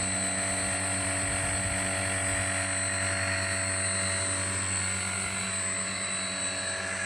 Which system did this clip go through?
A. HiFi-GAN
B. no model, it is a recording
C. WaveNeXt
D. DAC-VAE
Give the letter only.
B